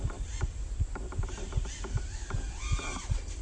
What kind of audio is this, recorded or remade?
remade